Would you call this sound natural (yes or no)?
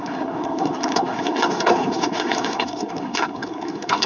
no